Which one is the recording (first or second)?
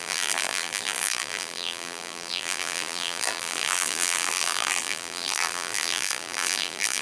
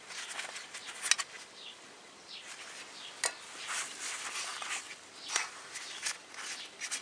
second